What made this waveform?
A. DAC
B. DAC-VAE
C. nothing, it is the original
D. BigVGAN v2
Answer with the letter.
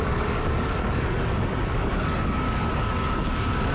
A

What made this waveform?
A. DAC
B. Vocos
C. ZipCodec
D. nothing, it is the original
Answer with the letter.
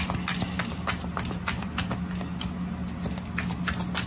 D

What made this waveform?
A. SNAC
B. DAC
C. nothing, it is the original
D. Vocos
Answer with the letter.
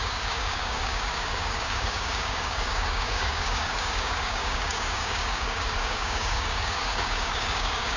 B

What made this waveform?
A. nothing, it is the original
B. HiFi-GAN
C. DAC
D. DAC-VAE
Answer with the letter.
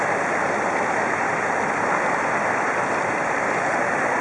A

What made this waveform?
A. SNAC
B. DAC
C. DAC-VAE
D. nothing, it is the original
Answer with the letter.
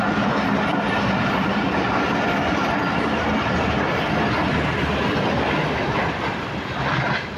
D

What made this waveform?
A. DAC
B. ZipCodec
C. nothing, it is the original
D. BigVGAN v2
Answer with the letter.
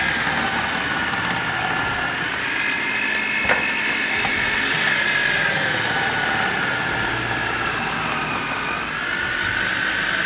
C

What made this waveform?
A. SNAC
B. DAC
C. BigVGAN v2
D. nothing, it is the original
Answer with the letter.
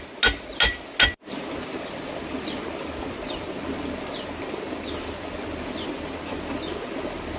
D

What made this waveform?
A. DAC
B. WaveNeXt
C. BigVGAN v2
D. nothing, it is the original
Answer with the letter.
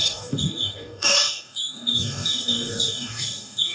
A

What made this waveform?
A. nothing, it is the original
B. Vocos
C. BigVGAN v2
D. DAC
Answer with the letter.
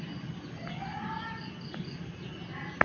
A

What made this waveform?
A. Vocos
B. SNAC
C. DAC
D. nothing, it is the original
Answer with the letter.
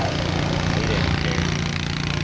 D